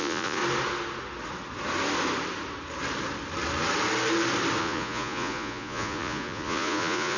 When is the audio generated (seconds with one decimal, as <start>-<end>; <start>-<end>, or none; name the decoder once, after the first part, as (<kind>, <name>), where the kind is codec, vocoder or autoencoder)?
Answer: 0.0-0.4 (vocoder, Vocos); 4.6-7.2